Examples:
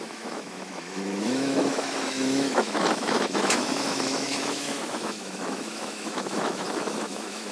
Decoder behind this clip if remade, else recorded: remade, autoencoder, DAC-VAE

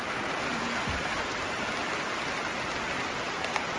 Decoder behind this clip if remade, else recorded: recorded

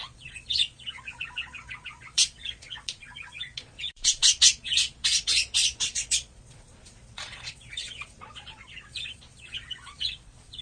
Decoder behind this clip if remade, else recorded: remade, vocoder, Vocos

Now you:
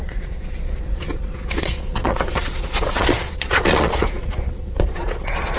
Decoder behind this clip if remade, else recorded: remade, vocoder, Vocos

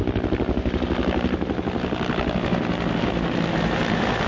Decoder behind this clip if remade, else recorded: recorded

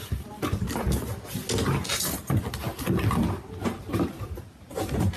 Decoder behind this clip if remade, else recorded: recorded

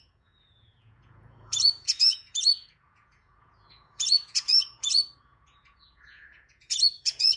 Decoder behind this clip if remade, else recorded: remade, vocoder, Vocos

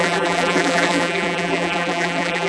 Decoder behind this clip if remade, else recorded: remade, vocoder, BigVGAN v2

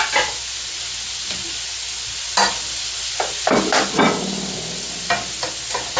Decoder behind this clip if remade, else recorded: recorded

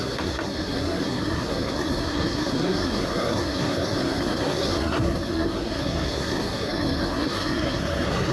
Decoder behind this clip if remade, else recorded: remade, codec, SNAC